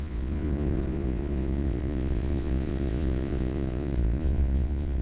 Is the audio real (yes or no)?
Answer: no